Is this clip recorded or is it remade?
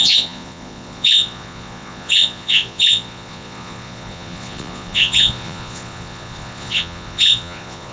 remade